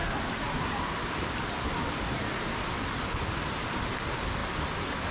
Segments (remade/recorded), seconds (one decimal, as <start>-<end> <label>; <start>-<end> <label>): 0.0-5.1 recorded